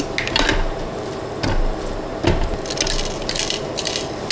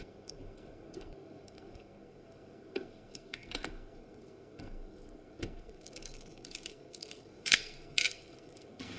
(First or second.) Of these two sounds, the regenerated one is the second